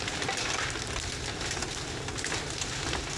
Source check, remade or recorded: recorded